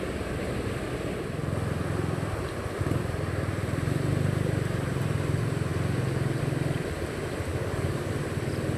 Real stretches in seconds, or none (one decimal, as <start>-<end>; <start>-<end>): 0.0-7.5; 8.1-8.8